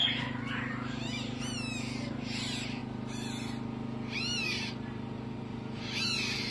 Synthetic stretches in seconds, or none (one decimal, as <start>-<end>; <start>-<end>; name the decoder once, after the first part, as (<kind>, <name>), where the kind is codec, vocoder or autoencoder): 0.0-2.8 (vocoder, BigVGAN v2); 4.4-6.5